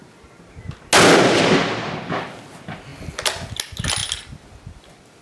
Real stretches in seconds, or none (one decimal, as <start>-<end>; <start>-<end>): 0.0-5.2